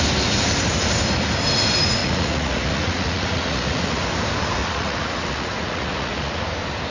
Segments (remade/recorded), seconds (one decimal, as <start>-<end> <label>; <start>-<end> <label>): 0.0-2.0 recorded; 2.0-4.0 remade; 4.0-4.6 recorded; 4.6-6.4 remade; 6.4-6.9 recorded